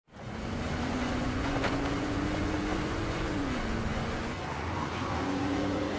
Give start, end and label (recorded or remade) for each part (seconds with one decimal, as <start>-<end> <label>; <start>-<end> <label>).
0.0-6.0 remade